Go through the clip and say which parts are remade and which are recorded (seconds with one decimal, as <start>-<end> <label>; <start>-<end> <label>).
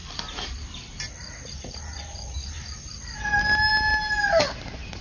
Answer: 0.0-5.0 recorded